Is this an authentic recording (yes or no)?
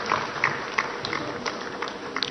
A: yes